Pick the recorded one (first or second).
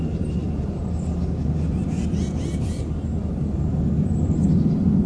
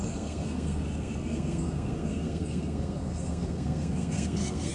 first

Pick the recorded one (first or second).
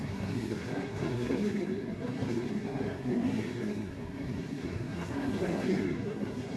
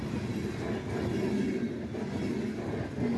second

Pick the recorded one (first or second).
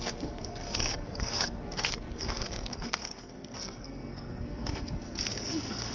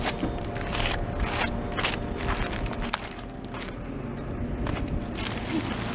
second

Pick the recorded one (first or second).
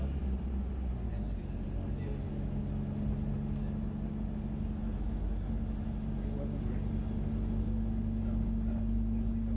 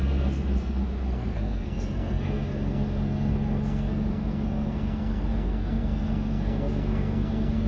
first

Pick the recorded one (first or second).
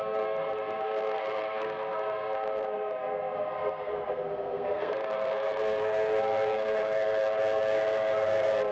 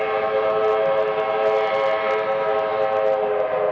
second